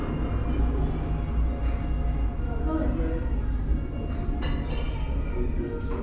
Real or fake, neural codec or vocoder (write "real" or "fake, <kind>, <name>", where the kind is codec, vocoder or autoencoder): real